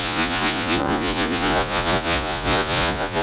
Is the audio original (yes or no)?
no